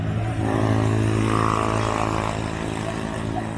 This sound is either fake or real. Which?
real